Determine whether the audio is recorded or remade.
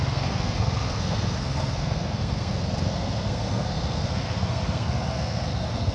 remade